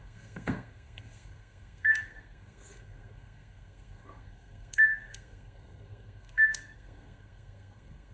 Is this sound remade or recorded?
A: remade